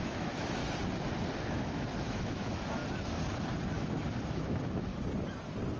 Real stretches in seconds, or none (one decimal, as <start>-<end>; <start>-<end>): 0.6-1.4; 2.8-4.3; 4.9-5.8